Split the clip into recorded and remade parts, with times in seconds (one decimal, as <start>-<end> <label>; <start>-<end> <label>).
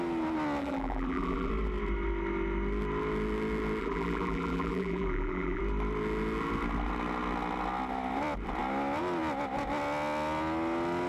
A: 0.0-0.6 recorded; 0.6-1.5 remade; 1.5-3.8 recorded; 3.8-5.6 remade; 5.6-11.1 recorded